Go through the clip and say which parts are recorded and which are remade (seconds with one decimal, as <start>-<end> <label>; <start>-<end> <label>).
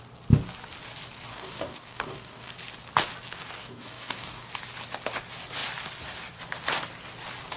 0.0-1.3 recorded; 1.3-2.5 remade; 2.5-3.6 recorded; 3.6-4.5 remade; 4.5-7.6 recorded